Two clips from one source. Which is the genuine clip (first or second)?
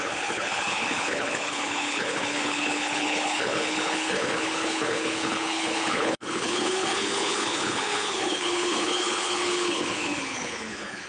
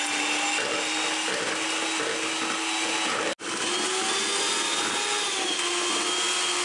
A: second